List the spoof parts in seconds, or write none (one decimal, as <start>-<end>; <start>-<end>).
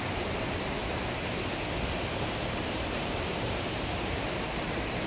0.0-0.8; 2.6-5.1